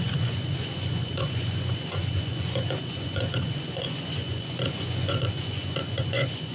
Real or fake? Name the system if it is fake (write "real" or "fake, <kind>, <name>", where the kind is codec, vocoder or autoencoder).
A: fake, vocoder, Vocos